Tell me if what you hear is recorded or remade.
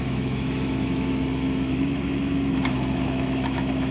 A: remade